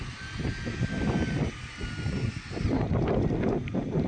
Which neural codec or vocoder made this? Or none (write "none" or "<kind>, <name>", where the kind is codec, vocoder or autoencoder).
none